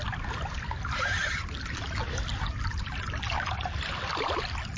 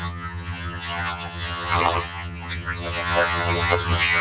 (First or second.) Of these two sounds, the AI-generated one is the second